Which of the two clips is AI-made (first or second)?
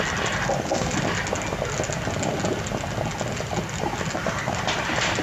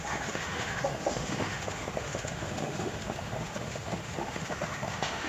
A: second